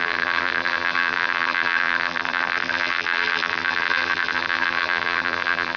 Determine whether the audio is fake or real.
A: fake